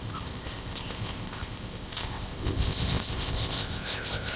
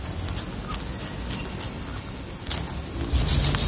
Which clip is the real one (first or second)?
second